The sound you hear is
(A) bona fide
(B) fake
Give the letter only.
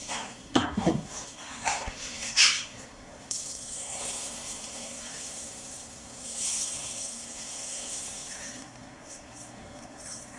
B